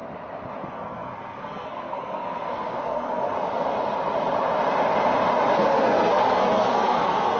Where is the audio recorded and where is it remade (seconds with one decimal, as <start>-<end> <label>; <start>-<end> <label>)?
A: 0.0-0.7 recorded; 0.7-3.3 remade; 3.3-5.5 recorded; 5.5-7.4 remade